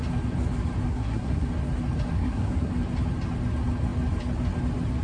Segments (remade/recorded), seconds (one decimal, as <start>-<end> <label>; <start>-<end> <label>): 0.0-0.9 recorded; 0.9-1.5 remade; 1.5-2.1 recorded; 2.1-2.7 remade; 2.7-5.0 recorded